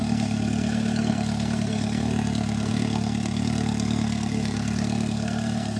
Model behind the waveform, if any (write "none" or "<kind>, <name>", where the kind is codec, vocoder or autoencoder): codec, SNAC